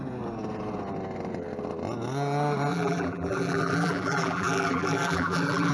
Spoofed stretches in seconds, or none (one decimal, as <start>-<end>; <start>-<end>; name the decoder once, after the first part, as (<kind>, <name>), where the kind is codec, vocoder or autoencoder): 2.7-5.7 (vocoder, BigVGAN v2)